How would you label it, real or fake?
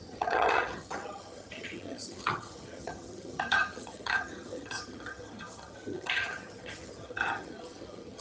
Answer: fake